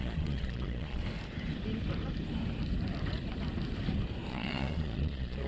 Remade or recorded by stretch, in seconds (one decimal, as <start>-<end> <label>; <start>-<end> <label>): 0.0-1.0 remade; 1.0-4.3 recorded; 4.3-5.5 remade